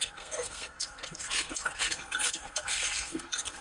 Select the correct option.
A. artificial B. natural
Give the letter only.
A